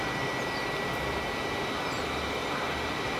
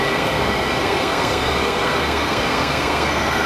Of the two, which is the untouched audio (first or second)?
first